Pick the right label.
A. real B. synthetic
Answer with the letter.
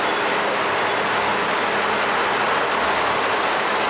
A